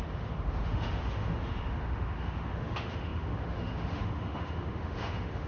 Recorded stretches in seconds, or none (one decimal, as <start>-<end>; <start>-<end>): none